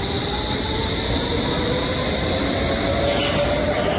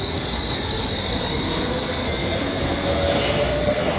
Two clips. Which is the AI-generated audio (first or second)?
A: second